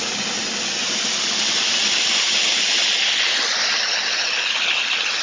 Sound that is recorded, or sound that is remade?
recorded